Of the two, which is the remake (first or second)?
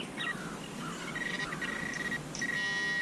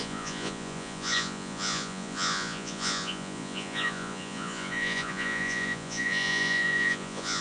second